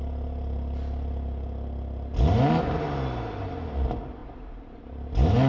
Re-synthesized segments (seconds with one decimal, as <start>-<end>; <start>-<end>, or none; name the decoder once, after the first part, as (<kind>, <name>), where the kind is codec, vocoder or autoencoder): 4.2-4.9 (vocoder, BigVGAN v2)